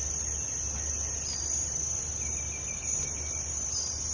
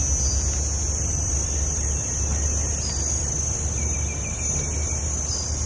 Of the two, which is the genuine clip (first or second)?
second